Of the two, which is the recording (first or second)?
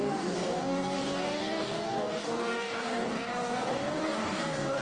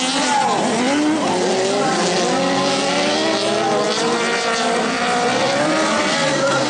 second